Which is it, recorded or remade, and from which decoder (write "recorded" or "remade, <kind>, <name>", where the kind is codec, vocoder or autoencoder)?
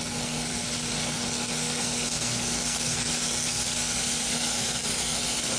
remade, codec, SNAC